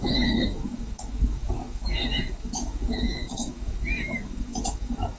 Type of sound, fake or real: fake